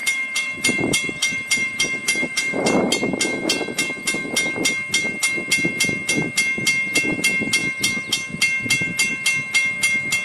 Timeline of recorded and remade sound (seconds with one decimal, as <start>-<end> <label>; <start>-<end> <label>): 0.0-2.9 remade; 2.9-10.2 recorded